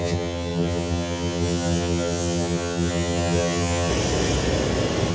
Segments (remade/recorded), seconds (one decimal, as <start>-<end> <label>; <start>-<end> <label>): 0.0-3.9 remade; 3.9-5.1 recorded